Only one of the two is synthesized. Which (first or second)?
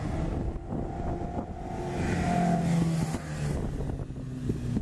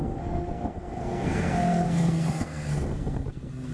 second